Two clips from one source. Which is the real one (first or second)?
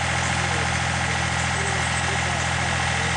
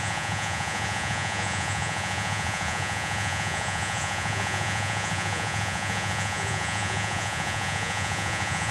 first